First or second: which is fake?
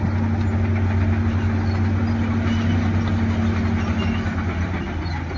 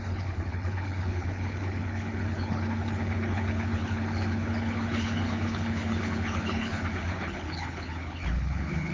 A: second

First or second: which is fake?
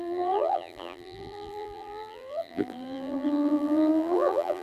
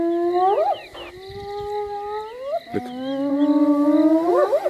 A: first